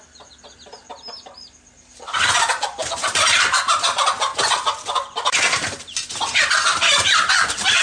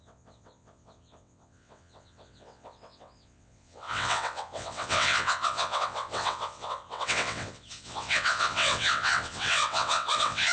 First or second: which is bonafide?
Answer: first